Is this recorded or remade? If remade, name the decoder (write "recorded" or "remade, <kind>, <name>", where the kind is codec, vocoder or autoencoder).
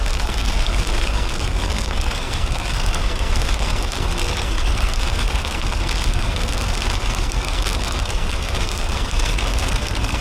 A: remade, codec, SNAC